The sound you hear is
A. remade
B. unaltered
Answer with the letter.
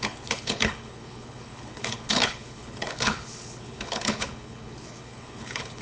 A